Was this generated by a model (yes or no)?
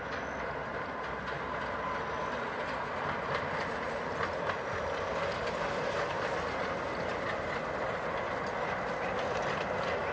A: no